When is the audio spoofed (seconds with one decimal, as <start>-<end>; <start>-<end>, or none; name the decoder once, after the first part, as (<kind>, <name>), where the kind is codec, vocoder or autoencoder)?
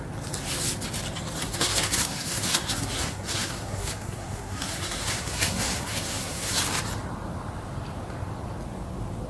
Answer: 1.4-6.6 (codec, SNAC)